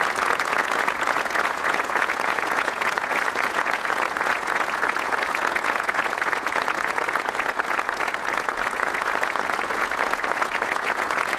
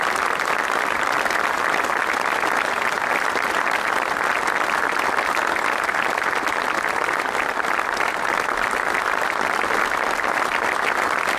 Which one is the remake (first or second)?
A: first